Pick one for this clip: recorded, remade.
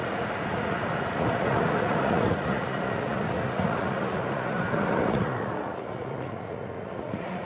remade